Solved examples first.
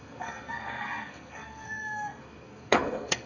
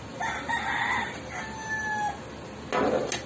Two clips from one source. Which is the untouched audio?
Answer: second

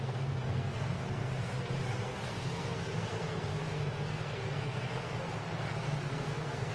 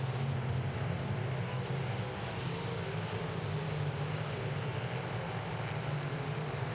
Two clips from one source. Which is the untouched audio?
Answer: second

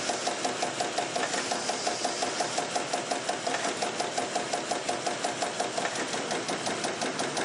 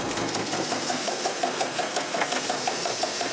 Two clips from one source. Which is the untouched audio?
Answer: first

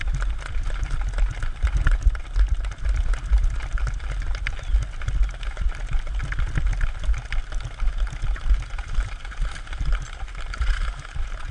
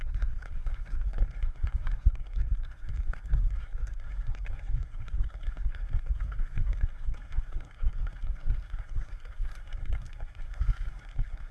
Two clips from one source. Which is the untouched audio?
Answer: first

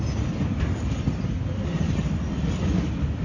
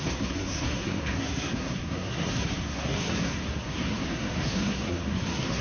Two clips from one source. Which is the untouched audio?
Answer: first